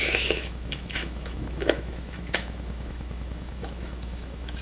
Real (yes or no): no